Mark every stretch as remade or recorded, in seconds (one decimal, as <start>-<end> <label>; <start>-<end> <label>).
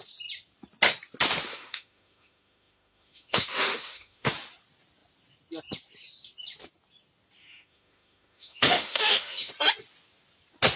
0.0-1.5 recorded; 1.5-4.3 remade; 4.3-7.4 recorded; 7.4-9.5 remade; 9.5-10.8 recorded